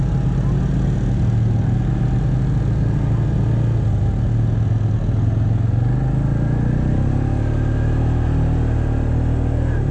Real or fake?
real